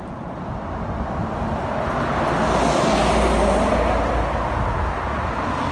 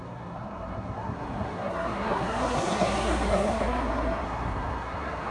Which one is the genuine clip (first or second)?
first